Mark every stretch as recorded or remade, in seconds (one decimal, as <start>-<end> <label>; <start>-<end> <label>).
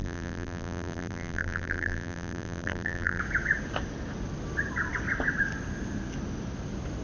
0.0-3.2 remade; 3.2-7.0 recorded